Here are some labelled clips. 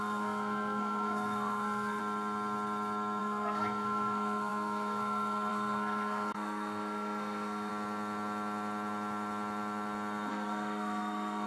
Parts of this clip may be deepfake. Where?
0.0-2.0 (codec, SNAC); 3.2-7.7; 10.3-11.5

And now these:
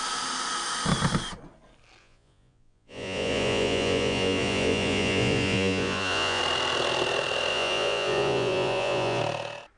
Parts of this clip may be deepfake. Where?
2.0-6.4 (vocoder, Vocos); 7.5-9.2

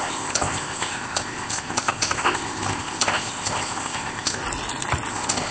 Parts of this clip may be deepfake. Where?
0.0-4.4 (codec, ZipCodec); 5.1-5.5

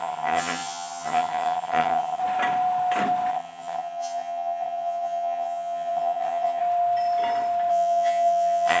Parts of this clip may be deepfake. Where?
0.0-2.2 (vocoder, HiFi-GAN); 3.3-6.6; 7.7-8.8

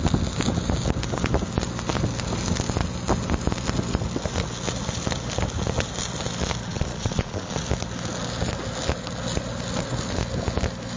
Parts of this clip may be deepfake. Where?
6.7-7.6 (vocoder, Vocos)

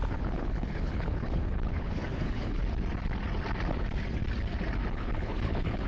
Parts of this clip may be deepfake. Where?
0.0-2.6 (codec, HILCodec); 4.9-5.9